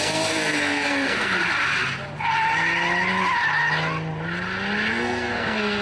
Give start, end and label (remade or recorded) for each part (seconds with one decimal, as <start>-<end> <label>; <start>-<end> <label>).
0.0-1.4 remade; 1.4-4.9 recorded; 4.9-5.8 remade